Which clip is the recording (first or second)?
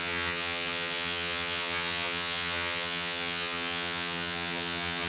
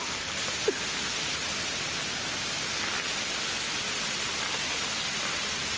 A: second